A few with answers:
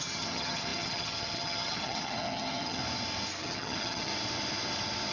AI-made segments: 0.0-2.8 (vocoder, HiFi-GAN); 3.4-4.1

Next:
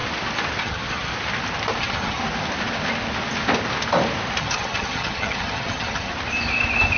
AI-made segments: 0.6-1.1 (vocoder, HiFi-GAN); 1.8-2.2; 4.4-6.1